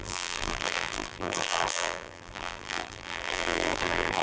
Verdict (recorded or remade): remade